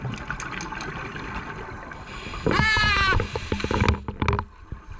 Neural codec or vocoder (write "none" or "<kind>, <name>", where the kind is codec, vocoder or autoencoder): none